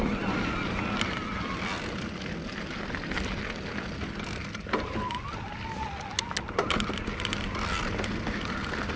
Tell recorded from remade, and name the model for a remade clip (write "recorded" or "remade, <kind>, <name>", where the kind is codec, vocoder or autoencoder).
recorded